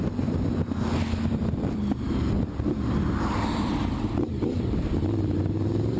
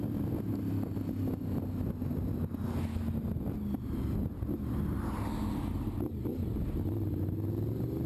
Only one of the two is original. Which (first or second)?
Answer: second